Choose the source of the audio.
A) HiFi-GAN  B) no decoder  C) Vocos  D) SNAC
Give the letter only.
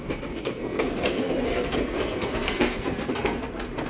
D